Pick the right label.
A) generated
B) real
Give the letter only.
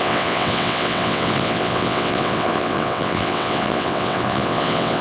A